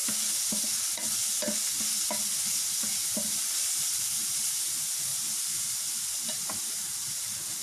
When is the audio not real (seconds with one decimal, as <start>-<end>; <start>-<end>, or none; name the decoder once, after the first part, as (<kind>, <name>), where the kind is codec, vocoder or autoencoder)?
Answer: 3.1-5.1 (vocoder, BigVGAN v2); 6.8-7.6